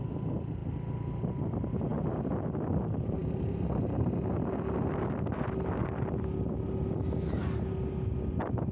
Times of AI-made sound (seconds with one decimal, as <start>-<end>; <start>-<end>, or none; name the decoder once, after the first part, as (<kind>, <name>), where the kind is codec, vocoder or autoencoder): none